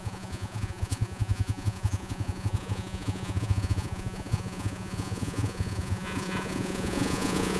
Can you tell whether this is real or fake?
fake